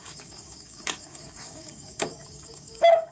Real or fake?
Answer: fake